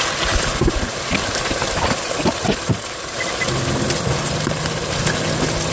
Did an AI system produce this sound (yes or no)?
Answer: no